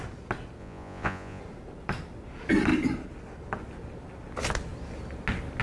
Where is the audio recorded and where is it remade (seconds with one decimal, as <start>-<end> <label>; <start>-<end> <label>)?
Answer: 0.0-0.6 recorded; 0.6-1.4 remade; 1.4-5.6 recorded